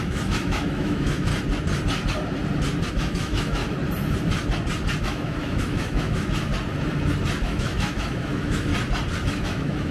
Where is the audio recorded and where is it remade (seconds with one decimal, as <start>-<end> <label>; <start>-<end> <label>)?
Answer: 0.0-1.3 remade; 1.3-2.9 recorded; 2.9-3.6 remade; 3.6-5.0 recorded; 5.0-6.5 remade; 6.5-7.4 recorded; 7.4-8.7 remade; 8.7-9.3 recorded; 9.3-9.9 remade